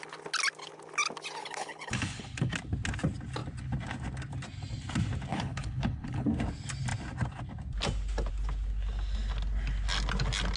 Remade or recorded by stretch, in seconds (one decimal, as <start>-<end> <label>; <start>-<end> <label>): 0.0-1.4 recorded; 1.4-2.5 remade; 2.5-5.3 recorded; 5.3-6.3 remade; 6.3-10.6 recorded

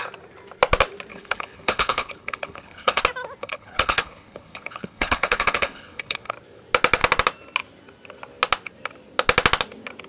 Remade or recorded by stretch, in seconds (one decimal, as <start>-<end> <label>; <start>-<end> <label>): 0.0-1.1 recorded; 1.1-3.0 remade; 3.0-3.4 recorded; 3.4-6.3 remade; 6.3-10.1 recorded

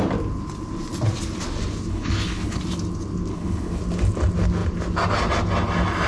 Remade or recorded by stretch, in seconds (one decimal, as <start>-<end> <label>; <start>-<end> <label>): 0.0-1.9 recorded; 1.9-2.6 remade; 2.6-3.3 recorded; 3.3-3.8 remade; 3.8-6.1 recorded